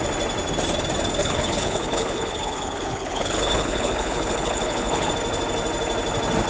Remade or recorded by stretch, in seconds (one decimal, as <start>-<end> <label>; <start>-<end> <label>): 0.0-1.2 recorded; 1.2-5.1 remade; 5.1-6.5 recorded